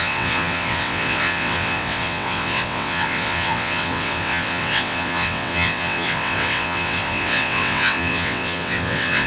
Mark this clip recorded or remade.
remade